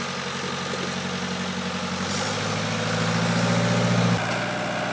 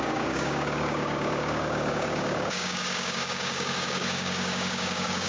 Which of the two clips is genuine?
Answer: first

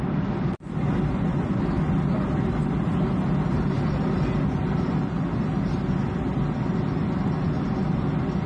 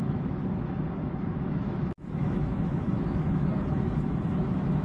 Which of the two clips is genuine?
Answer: first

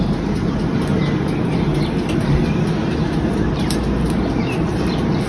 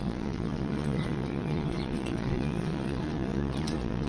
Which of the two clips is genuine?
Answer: first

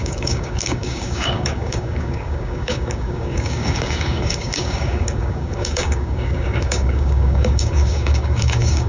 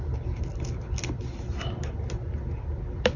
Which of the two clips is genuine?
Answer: second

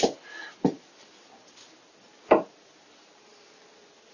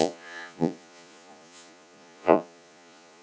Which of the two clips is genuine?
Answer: first